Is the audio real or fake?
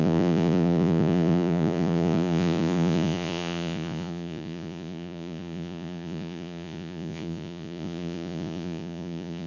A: fake